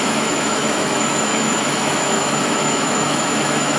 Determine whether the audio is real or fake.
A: fake